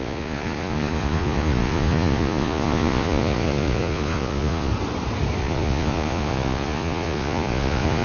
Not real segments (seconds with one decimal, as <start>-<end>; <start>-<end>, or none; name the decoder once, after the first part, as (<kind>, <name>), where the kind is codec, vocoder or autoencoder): 0.0-4.7 (vocoder, Vocos); 5.4-8.0